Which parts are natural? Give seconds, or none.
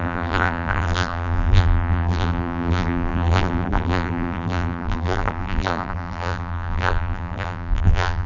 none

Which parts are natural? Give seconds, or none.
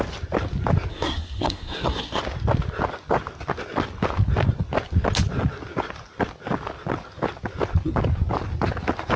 0.0-0.9; 2.2-9.2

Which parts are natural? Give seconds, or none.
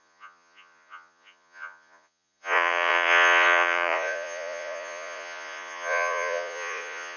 none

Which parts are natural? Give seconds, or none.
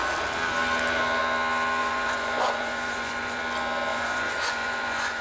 0.0-1.8; 3.4-3.9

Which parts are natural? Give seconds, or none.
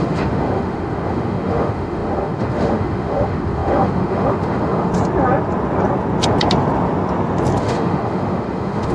4.9-7.6